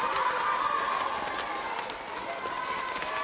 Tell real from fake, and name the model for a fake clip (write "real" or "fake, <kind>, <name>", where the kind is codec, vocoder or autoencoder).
real